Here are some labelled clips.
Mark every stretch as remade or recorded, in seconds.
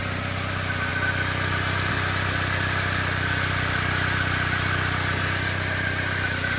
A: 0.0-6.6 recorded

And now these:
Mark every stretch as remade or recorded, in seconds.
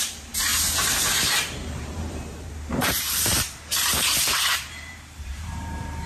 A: 0.0-0.5 remade; 0.5-1.1 recorded; 1.1-6.1 remade